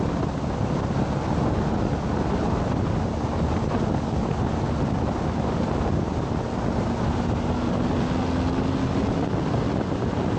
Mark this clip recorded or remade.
recorded